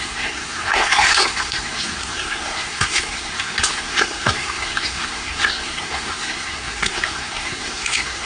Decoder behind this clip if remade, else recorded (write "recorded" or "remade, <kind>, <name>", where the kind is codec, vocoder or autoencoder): remade, codec, SNAC